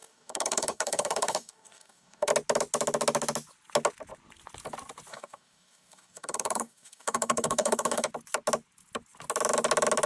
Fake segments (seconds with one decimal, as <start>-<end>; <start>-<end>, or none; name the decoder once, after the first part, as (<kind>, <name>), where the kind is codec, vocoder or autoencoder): 0.0-2.3 (codec, DAC); 5.1-8.1